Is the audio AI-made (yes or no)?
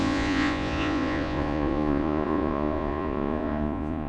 yes